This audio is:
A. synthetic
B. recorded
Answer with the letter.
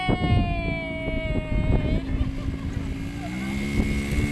B